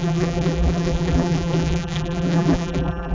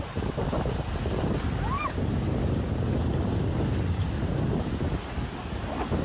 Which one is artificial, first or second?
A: first